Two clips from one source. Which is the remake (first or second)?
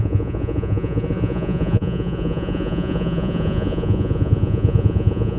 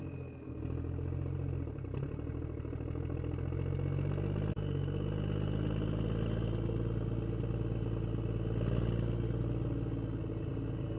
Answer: first